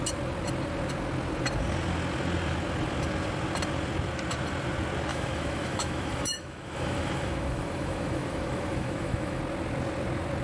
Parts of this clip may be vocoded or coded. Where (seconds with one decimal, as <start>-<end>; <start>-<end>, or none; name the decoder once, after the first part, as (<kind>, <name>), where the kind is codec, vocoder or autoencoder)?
5.1-9.4 (autoencoder, DAC-VAE)